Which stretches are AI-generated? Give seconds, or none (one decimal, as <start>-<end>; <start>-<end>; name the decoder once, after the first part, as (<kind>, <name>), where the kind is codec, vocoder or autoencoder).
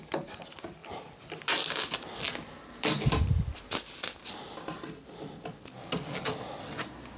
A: none